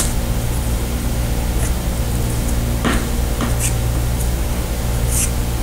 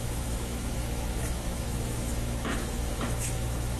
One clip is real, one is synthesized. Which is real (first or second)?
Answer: first